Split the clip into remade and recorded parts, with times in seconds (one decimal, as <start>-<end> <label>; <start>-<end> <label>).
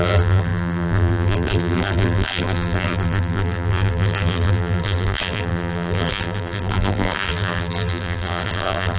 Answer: 0.0-9.0 remade